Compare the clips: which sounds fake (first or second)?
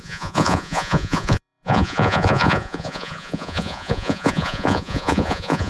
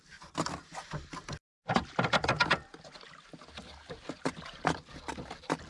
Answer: first